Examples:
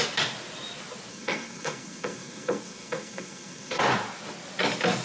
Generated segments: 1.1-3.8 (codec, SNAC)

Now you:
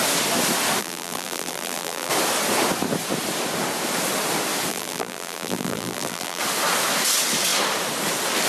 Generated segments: 0.8-2.1 (vocoder, BigVGAN v2); 4.7-6.4

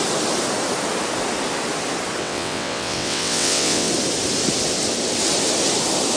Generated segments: 2.2-3.9 (vocoder, WaveNeXt)

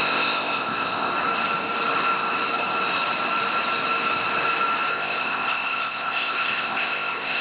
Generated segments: 0.0-1.1 (codec, ZipCodec); 4.9-7.4

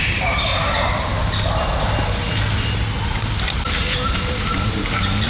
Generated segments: 0.0-0.5 (vocoder, BigVGAN v2); 3.7-5.3

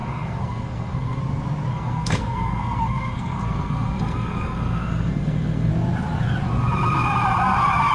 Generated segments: 0.0-1.2 (codec, SNAC); 1.7-5.7